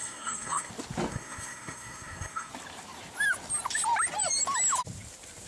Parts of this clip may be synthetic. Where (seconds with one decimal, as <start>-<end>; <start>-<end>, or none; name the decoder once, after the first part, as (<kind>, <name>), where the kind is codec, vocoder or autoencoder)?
0.0-0.7 (codec, SNAC); 1.1-2.5